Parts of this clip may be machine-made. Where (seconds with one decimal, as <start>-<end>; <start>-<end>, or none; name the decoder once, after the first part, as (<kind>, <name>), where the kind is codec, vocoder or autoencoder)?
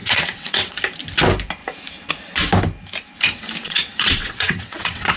0.0-0.8 (vocoder, WaveNeXt); 3.6-5.2